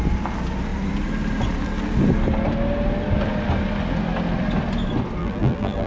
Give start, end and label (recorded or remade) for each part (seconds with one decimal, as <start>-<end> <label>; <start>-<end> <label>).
0.0-5.2 recorded; 5.2-5.9 remade